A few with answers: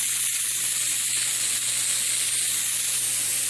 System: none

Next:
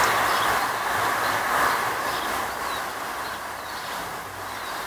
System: none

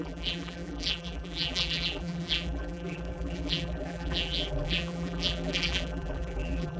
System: vocoder, BigVGAN v2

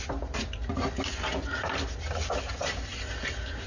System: none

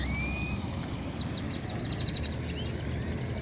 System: none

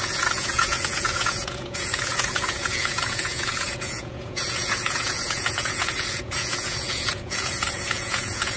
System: vocoder, Vocos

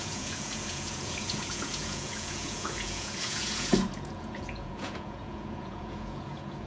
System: vocoder, Vocos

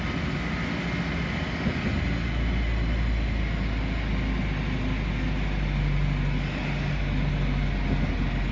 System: none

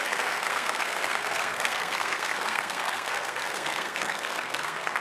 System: codec, SNAC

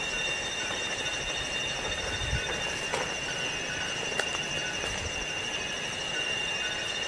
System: none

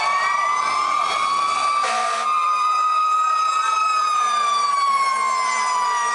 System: vocoder, BigVGAN v2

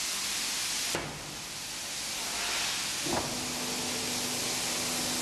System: none